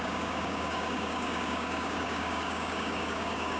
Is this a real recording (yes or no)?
no